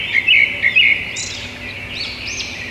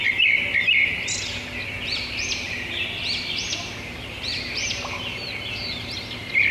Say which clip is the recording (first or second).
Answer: first